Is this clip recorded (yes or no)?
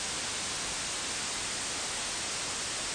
yes